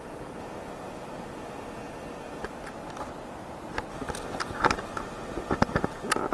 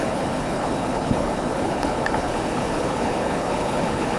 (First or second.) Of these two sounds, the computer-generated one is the second